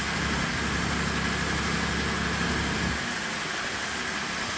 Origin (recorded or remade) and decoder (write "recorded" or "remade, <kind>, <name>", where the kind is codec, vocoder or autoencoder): recorded